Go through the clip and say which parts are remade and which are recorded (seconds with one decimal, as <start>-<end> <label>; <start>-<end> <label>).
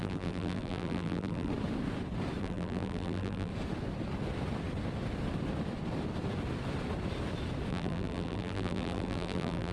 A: 0.0-1.5 remade; 1.5-2.4 recorded; 2.4-3.5 remade; 3.5-7.7 recorded; 7.7-9.7 remade